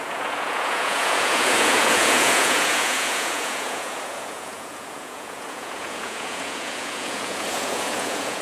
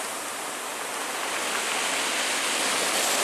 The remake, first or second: first